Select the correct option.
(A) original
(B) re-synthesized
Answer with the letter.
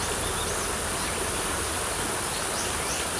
A